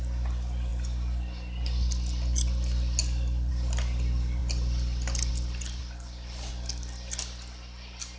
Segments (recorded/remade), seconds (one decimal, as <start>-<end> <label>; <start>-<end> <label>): 0.0-4.4 recorded; 4.4-5.3 remade; 5.3-5.8 recorded; 5.8-6.5 remade; 6.5-8.2 recorded